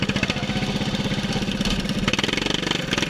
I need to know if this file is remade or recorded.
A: recorded